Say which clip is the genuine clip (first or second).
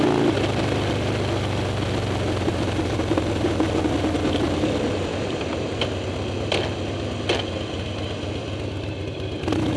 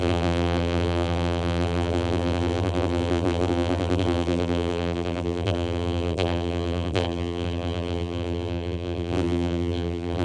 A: first